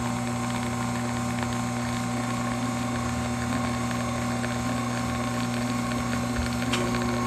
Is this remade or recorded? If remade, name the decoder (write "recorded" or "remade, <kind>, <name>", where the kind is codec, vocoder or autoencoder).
recorded